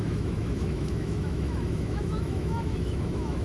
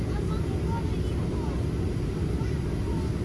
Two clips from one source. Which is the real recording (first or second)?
second